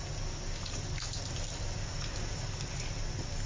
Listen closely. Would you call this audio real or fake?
real